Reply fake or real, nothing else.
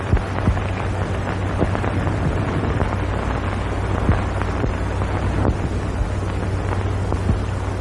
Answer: real